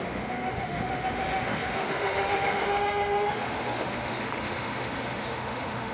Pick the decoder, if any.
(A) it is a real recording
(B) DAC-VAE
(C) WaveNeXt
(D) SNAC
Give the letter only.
B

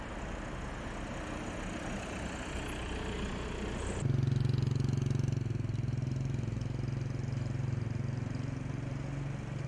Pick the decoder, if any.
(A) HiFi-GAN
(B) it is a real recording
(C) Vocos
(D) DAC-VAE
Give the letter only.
B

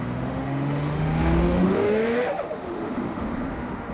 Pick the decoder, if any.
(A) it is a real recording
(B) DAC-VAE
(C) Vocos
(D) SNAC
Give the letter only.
B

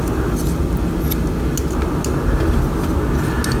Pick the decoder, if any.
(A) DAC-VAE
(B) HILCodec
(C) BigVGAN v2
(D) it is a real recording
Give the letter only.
D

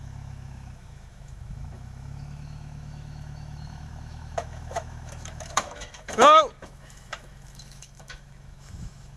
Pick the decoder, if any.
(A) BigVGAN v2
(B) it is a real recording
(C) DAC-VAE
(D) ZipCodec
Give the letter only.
C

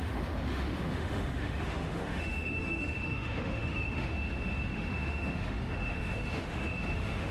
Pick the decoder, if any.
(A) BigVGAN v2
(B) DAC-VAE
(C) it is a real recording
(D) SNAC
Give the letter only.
B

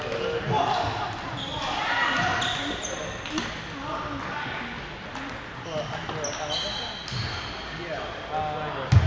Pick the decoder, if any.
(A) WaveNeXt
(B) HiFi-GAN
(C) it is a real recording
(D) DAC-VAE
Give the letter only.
C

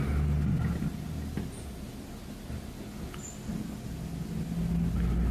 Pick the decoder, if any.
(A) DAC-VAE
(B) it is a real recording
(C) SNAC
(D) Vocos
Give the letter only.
B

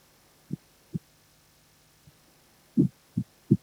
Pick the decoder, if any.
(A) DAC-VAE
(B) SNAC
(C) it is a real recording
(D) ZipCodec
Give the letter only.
C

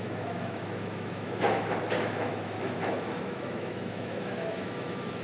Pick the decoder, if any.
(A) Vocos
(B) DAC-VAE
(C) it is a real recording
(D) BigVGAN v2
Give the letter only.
B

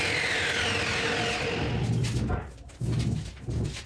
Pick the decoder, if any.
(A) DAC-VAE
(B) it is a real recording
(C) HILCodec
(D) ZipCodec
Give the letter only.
B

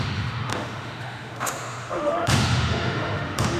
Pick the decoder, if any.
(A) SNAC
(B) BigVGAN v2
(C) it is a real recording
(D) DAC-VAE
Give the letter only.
D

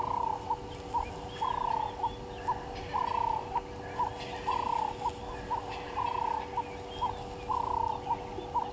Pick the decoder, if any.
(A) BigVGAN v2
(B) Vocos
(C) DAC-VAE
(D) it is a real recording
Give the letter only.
D